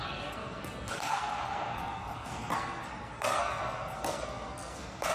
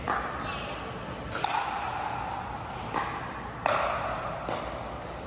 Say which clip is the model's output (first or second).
first